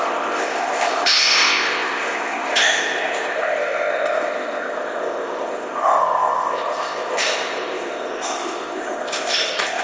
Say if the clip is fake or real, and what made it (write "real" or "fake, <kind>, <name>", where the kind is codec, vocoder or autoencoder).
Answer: fake, codec, ZipCodec